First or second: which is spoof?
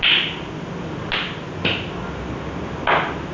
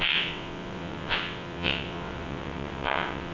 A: second